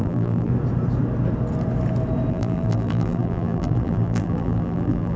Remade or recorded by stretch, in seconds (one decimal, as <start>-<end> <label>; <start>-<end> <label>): 0.0-0.5 remade; 0.5-2.3 recorded; 2.3-5.2 remade